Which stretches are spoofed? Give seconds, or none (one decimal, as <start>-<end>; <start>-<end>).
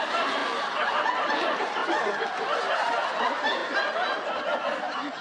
0.0-0.4; 0.9-1.8; 3.2-3.6